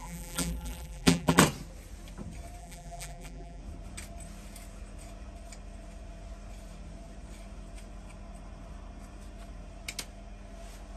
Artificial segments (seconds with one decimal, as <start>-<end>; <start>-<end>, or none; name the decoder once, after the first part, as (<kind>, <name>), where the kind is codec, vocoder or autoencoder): 0.0-1.4 (vocoder, BigVGAN v2); 2.6-3.6